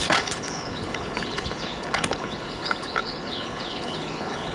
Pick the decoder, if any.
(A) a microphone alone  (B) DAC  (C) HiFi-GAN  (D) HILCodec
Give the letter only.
D